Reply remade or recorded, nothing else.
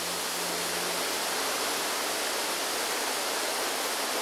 recorded